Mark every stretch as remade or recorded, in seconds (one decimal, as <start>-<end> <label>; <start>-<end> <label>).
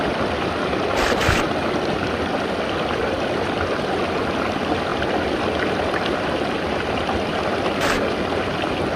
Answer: 0.0-9.0 recorded